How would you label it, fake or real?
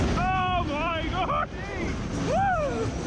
real